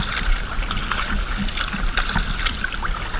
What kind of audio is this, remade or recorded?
recorded